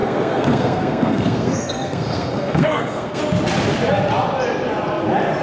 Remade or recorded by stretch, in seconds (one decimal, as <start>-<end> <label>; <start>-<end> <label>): 0.0-3.2 remade; 3.2-5.4 recorded